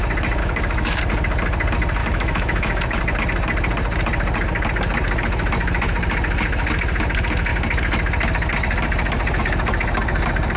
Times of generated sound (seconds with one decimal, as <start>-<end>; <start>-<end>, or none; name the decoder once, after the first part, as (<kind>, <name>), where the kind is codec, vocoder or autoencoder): 0.4-1.0 (autoencoder, DAC-VAE); 2.0-3.0

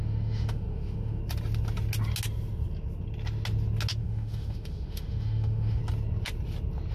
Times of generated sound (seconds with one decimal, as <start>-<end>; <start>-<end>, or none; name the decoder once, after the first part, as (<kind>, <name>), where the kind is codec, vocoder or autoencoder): 0.0-1.2 (autoencoder, DAC-VAE); 4.0-5.8